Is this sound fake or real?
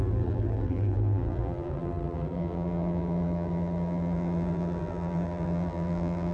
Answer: fake